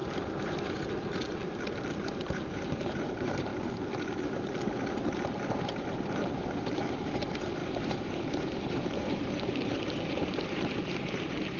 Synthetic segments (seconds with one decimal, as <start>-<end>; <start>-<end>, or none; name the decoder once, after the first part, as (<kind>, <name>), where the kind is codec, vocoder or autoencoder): 1.9-3.5 (vocoder, BigVGAN v2); 4.9-11.6